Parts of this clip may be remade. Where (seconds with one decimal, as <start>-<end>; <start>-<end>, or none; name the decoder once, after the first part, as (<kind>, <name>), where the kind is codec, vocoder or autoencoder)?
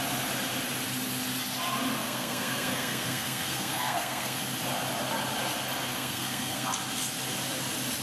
2.0-4.4 (codec, SNAC); 5.9-6.7